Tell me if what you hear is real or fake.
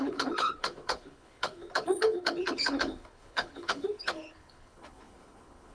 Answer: fake